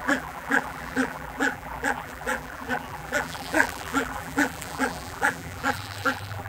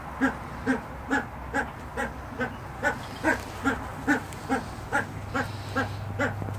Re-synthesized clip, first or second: first